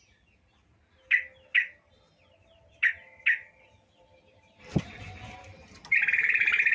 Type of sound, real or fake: real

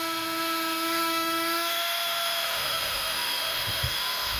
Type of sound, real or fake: fake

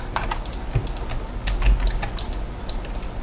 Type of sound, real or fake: real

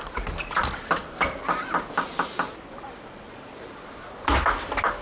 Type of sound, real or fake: real